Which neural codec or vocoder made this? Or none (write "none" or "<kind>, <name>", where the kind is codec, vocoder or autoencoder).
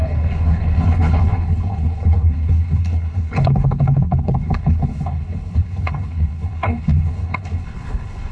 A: codec, HILCodec